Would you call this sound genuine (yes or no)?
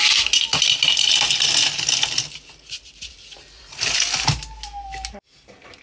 yes